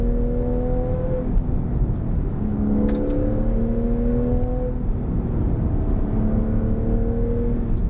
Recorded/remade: recorded